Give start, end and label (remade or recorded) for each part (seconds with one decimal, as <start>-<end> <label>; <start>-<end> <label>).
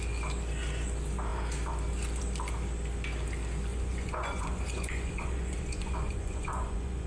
0.0-3.7 recorded; 3.7-7.1 remade